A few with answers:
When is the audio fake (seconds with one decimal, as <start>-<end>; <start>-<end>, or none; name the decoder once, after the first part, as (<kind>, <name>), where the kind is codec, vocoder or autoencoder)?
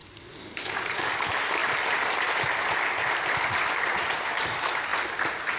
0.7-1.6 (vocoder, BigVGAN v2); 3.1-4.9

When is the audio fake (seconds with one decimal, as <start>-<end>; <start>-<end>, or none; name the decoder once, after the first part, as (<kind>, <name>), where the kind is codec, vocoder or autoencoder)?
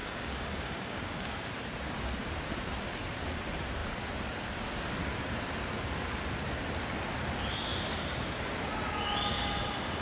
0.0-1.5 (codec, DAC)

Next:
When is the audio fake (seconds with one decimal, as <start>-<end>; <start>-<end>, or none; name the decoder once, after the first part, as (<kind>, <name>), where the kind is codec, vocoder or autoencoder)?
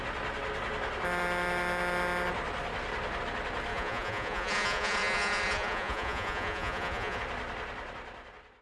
3.7-7.2 (vocoder, Vocos)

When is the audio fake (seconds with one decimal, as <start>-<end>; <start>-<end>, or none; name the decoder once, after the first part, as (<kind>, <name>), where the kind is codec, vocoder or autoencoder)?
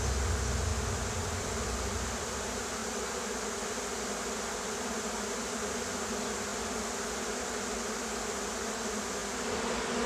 0.7-2.3 (vocoder, BigVGAN v2); 2.8-3.6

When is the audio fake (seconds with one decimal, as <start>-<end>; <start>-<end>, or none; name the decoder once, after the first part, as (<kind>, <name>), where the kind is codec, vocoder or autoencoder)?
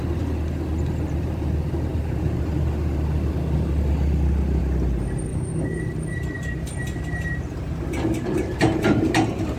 5.3-5.8 (codec, DAC)